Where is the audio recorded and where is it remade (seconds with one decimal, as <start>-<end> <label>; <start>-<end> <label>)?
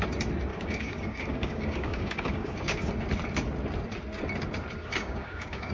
0.0-0.5 recorded; 0.5-2.9 remade; 2.9-4.8 recorded; 4.8-5.7 remade